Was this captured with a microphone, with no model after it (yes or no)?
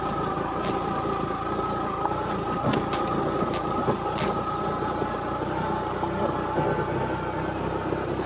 yes